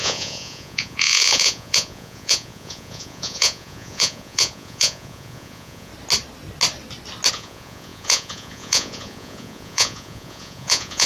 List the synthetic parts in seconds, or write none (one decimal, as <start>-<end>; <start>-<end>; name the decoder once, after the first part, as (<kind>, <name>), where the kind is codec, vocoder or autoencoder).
0.0-5.9 (vocoder, Vocos); 7.3-11.1